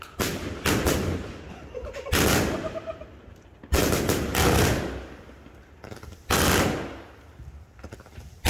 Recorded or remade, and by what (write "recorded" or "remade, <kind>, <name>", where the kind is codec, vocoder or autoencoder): recorded